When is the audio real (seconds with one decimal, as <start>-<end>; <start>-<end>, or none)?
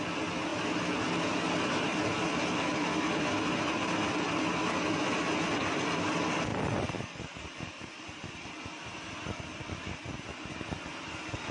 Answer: 0.0-6.5; 9.8-11.5